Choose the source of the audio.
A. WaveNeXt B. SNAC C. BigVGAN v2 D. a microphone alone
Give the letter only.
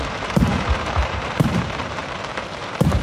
C